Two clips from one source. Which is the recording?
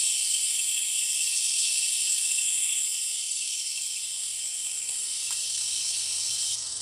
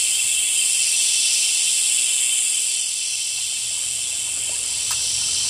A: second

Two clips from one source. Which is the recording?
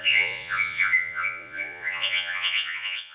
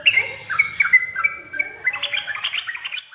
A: second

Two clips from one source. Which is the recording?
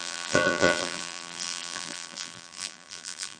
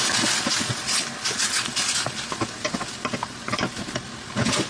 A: second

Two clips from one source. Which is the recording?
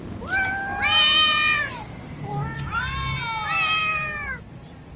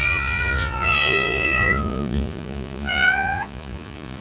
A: first